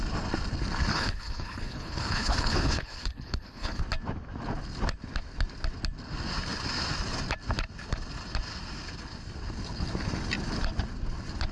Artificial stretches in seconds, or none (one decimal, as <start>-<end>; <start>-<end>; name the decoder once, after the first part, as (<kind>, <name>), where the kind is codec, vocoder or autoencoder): 0.9-3.8 (codec, HILCodec)